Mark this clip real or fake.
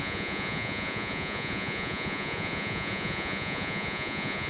fake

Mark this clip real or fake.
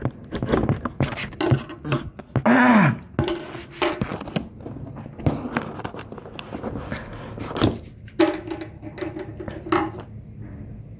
real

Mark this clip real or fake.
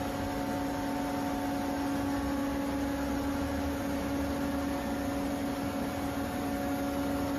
real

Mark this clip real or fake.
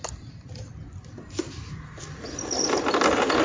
real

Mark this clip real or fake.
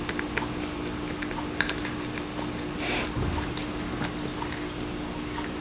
real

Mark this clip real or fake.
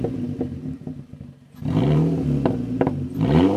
fake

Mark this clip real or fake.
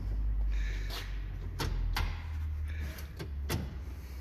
real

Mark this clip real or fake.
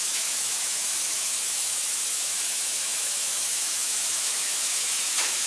fake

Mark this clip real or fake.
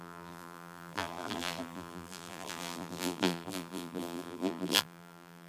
fake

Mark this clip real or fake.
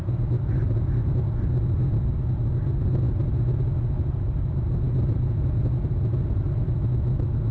real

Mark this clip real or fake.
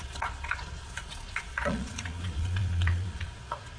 fake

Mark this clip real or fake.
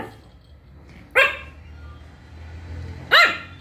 real